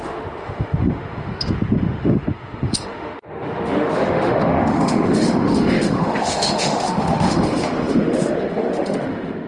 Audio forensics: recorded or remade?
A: remade